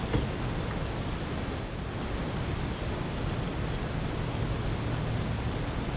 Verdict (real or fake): real